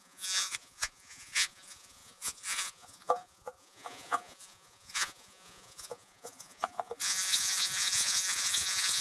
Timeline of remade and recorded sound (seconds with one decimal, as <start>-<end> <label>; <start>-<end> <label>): 0.0-9.0 remade